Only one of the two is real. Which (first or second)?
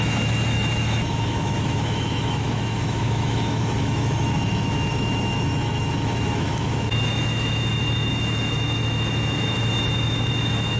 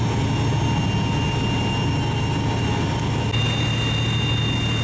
second